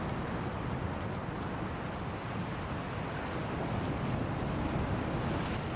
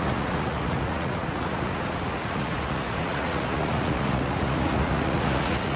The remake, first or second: second